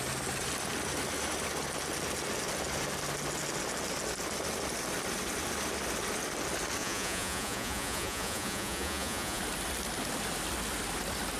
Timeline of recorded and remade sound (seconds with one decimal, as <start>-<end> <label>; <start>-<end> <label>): 0.0-6.8 recorded; 6.8-9.4 remade; 9.4-11.4 recorded